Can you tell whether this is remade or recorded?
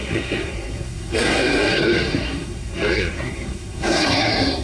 remade